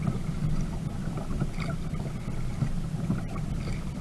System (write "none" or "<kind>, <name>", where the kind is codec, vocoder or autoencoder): none